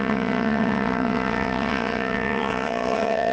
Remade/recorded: remade